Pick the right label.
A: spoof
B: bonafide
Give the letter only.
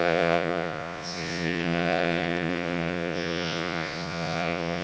A